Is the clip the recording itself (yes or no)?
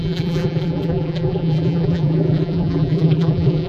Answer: no